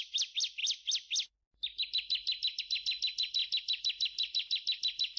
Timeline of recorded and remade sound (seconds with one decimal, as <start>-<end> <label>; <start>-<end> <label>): 0.0-5.2 recorded